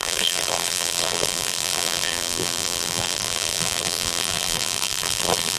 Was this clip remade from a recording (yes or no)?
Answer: yes